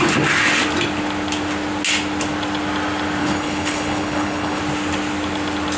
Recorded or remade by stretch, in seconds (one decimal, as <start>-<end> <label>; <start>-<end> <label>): 0.0-3.2 recorded; 3.2-4.6 remade; 4.6-5.8 recorded